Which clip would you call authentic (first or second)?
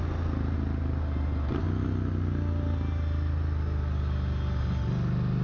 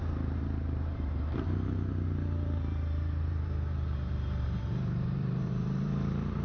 first